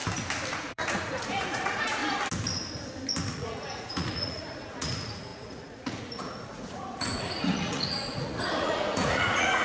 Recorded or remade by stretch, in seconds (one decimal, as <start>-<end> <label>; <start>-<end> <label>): 0.0-0.5 recorded; 0.5-2.0 remade; 2.0-3.3 recorded; 3.3-9.6 remade